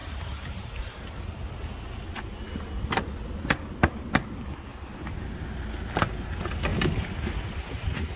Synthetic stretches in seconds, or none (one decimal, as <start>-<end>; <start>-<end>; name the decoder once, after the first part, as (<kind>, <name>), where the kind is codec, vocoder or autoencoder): 0.0-1.2 (vocoder, BigVGAN v2); 4.7-5.6; 6.7-7.3